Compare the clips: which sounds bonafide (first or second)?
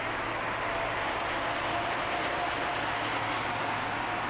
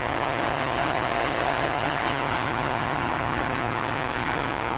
first